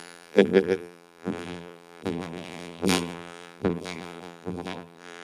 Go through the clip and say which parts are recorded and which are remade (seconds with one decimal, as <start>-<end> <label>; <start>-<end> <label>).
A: 0.0-5.2 remade